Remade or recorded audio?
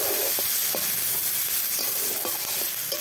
recorded